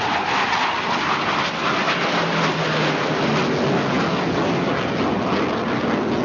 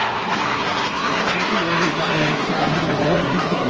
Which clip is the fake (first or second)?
second